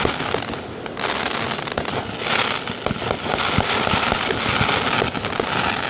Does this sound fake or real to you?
real